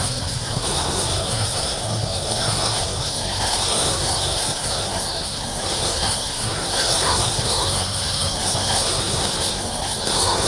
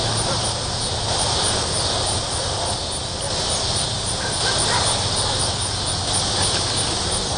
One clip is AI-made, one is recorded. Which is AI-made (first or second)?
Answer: first